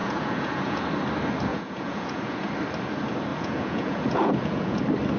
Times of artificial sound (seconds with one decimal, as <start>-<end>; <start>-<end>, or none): 0.0-0.8; 1.5-2.5; 3.3-4.8